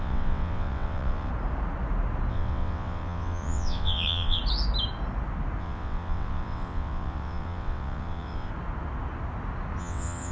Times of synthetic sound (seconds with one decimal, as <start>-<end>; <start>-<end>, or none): 0.0-1.3; 2.3-4.4; 5.6-8.5; 9.8-10.3